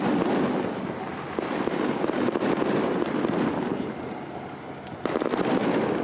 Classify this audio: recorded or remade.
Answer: recorded